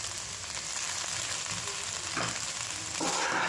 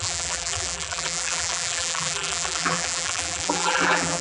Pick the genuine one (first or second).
first